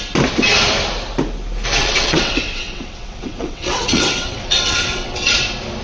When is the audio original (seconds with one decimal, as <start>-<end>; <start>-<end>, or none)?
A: 0.0-1.8; 5.3-5.8